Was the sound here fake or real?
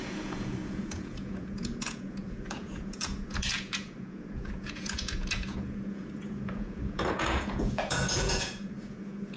fake